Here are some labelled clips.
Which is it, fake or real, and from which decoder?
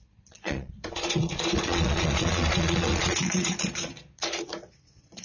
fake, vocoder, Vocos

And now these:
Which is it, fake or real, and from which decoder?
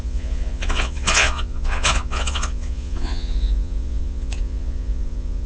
fake, vocoder, Vocos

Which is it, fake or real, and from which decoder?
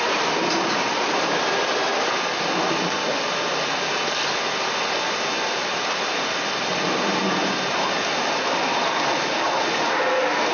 real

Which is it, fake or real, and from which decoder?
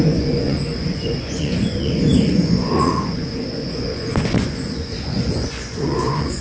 fake, vocoder, Vocos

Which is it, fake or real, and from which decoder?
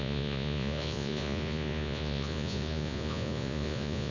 fake, vocoder, Vocos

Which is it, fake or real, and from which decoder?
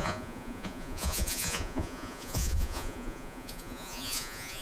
fake, vocoder, Vocos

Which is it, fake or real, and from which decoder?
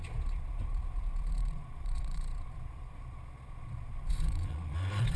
fake, vocoder, Vocos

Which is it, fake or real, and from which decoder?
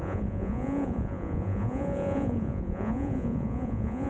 fake, vocoder, Vocos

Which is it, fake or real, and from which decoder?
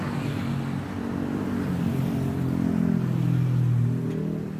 real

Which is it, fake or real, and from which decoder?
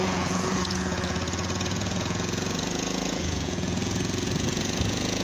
fake, vocoder, Vocos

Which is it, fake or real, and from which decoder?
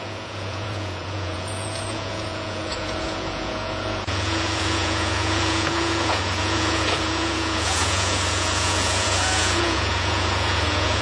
fake, vocoder, Vocos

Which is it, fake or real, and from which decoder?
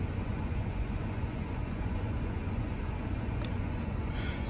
fake, vocoder, Vocos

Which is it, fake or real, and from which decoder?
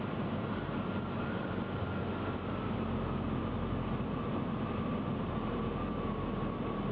real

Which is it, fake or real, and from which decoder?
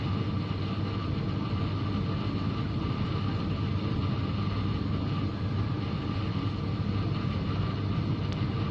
real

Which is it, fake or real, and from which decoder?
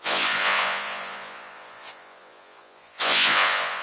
fake, vocoder, Vocos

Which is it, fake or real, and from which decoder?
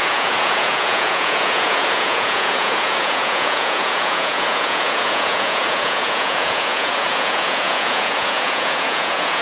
fake, vocoder, Vocos